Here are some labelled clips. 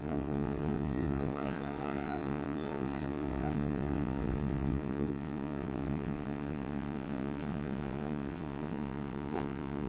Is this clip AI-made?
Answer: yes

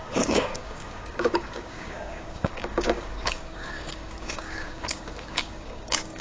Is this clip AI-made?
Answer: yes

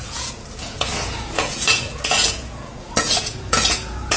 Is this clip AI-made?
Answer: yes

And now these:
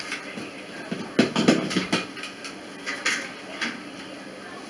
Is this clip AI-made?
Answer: no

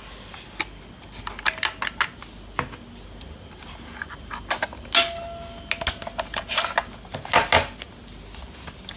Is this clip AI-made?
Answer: no